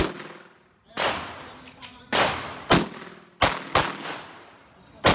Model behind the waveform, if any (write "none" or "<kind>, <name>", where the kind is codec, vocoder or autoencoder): none